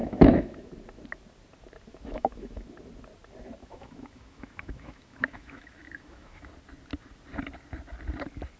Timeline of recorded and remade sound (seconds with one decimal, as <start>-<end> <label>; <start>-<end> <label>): 0.0-0.7 remade; 0.7-1.9 recorded; 1.9-2.6 remade; 2.6-3.6 recorded; 3.6-6.5 remade; 6.5-8.6 recorded